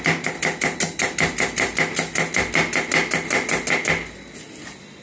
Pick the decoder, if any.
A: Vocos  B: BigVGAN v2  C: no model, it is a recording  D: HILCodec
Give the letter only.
C